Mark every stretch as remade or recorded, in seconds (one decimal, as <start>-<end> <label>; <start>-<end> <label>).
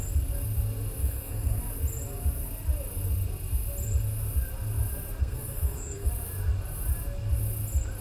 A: 0.0-1.0 recorded; 1.0-1.6 remade; 1.6-5.2 recorded; 5.2-6.1 remade; 6.1-8.0 recorded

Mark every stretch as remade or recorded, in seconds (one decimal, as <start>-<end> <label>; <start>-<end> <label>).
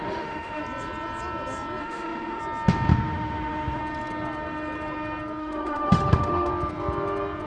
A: 0.0-0.6 remade; 0.6-1.8 recorded; 1.8-2.4 remade; 2.4-2.9 recorded; 2.9-3.8 remade; 3.8-5.4 recorded; 5.4-6.5 remade; 6.5-7.5 recorded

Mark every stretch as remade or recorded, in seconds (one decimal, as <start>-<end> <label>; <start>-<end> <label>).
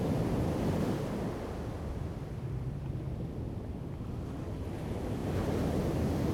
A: 0.0-5.2 recorded; 5.2-5.7 remade; 5.7-6.3 recorded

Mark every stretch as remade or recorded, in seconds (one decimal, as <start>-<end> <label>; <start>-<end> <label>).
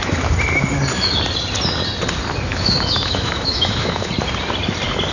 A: 0.0-2.5 recorded; 2.5-4.1 remade; 4.1-5.1 recorded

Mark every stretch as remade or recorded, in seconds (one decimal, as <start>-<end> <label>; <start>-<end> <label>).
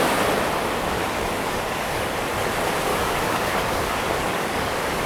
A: 0.0-1.0 recorded; 1.0-2.1 remade; 2.1-2.9 recorded; 2.9-5.1 remade